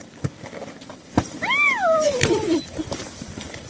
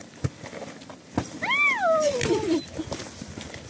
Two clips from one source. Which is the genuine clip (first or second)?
second